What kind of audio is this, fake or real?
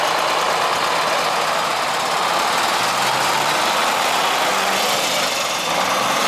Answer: real